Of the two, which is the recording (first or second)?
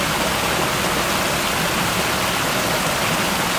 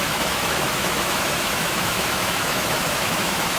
first